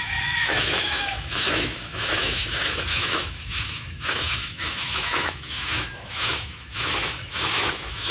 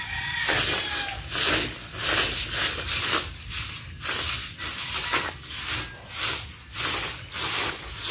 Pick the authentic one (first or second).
second